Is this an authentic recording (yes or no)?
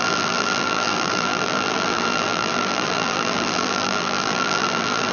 no